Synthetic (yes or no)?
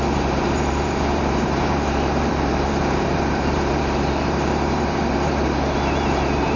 yes